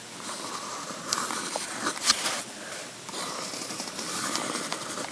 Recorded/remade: recorded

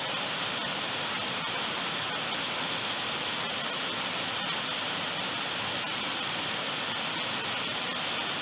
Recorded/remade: recorded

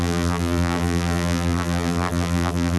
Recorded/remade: remade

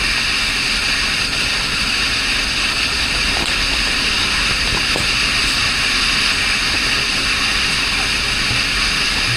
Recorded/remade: recorded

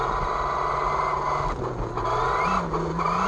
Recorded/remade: recorded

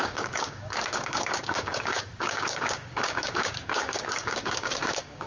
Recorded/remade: remade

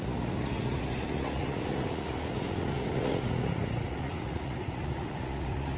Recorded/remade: remade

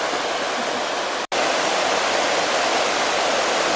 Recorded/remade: recorded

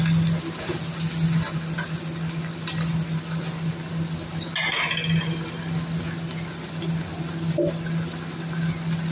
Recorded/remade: recorded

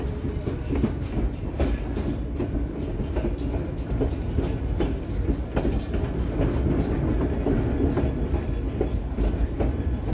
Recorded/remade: recorded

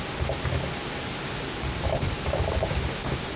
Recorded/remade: recorded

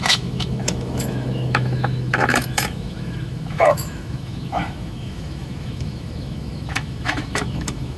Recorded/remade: remade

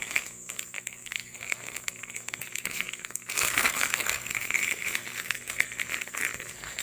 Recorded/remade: remade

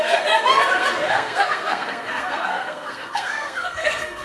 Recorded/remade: remade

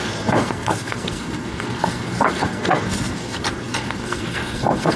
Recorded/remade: remade